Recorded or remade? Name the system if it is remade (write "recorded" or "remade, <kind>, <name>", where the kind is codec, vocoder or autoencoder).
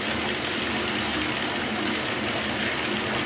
recorded